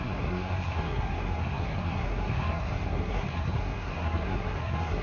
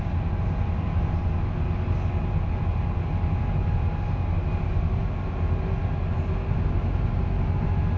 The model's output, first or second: first